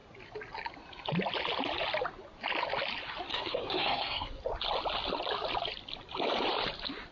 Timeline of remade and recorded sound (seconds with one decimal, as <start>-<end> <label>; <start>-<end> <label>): 0.0-3.3 recorded; 3.3-4.4 remade; 4.4-7.1 recorded